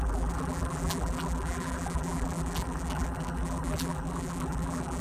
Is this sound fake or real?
fake